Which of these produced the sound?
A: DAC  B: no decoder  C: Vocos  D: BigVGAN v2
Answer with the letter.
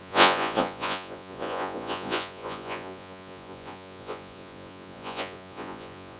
C